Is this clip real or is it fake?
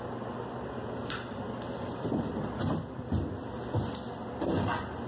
fake